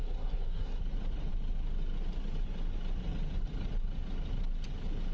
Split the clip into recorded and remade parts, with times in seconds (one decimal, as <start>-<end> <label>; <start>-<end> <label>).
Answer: 0.0-0.8 remade; 0.8-5.1 recorded